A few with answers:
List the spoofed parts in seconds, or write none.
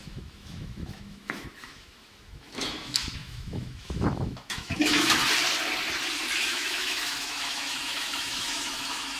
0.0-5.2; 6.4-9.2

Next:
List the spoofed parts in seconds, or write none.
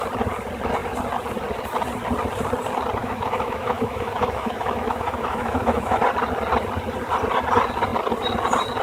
3.0-6.0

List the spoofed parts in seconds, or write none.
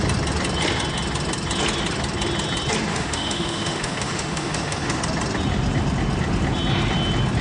2.9-5.0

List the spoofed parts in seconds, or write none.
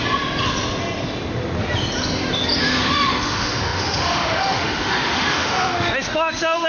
2.6-6.7